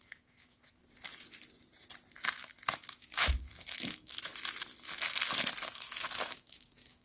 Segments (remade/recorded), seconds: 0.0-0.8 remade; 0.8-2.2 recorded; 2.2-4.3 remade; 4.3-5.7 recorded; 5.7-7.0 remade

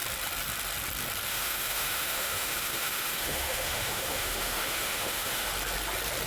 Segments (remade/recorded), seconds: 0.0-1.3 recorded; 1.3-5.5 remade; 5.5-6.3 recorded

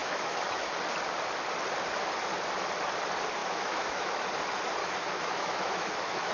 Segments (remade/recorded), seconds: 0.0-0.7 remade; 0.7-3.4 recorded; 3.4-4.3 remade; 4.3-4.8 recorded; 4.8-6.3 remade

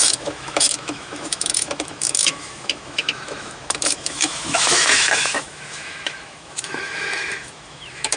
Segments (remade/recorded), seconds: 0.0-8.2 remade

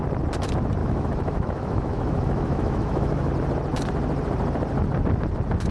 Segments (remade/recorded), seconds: 0.0-0.8 recorded; 0.8-3.3 remade; 3.3-5.7 recorded